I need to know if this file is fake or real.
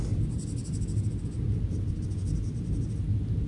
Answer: real